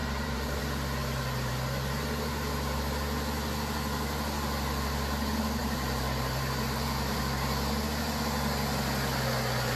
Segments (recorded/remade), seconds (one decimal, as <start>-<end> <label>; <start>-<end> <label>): 0.0-0.6 remade; 0.6-5.6 recorded; 5.6-7.2 remade; 7.2-9.8 recorded